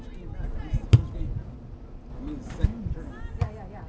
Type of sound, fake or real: real